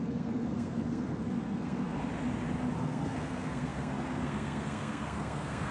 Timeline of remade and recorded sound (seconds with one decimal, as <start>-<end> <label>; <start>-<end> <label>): 0.0-2.0 remade; 2.0-2.8 recorded; 2.8-5.7 remade